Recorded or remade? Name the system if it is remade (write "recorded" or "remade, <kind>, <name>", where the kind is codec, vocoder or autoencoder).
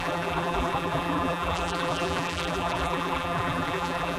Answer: remade, vocoder, BigVGAN v2